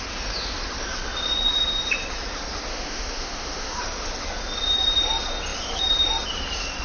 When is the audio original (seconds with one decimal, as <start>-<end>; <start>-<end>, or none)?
0.0-2.7; 3.8-6.8